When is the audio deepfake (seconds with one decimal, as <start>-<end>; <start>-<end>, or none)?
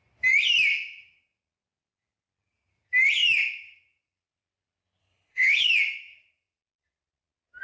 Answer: 5.0-5.7